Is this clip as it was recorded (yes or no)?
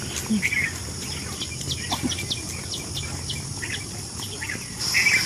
yes